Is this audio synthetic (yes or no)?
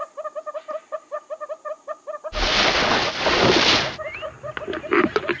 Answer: no